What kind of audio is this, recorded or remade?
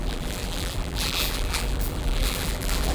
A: remade